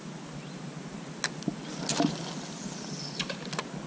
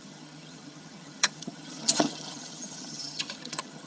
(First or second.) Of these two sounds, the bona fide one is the first